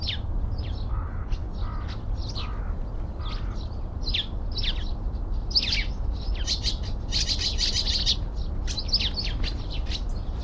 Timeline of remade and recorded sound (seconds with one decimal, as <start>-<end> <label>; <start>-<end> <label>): 0.0-0.9 recorded; 0.9-1.5 remade; 1.5-10.4 recorded